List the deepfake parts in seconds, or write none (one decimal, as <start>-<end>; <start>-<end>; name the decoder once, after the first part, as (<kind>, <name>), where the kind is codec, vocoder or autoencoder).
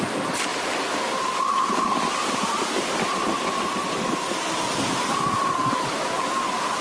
none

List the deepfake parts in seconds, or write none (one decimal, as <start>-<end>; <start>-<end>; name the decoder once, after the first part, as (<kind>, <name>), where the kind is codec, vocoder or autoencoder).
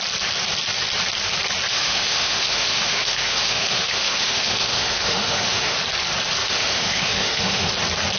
1.7-5.8 (autoencoder, DAC-VAE); 6.4-7.7